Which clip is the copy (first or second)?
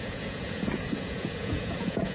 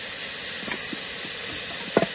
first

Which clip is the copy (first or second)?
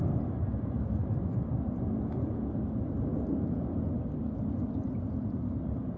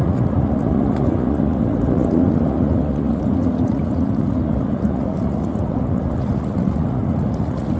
second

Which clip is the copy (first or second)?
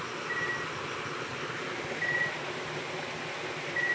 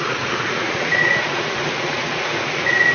second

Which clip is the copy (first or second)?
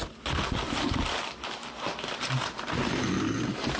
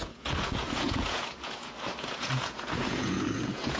second